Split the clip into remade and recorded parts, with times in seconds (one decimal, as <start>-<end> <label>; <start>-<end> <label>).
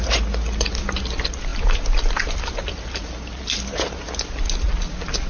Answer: 0.0-5.3 recorded